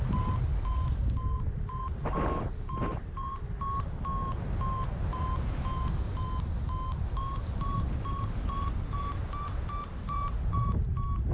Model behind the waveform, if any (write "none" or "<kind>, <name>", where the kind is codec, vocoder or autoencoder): none